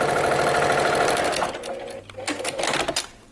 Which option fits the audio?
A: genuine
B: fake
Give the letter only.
A